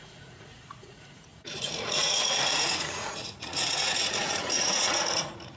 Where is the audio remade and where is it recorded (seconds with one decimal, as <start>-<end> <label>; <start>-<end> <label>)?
0.0-5.6 remade